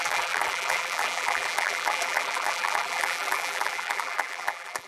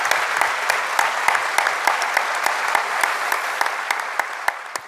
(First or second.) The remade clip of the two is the first